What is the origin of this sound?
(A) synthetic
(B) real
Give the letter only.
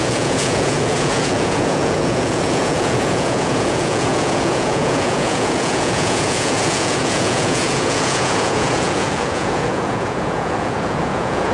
A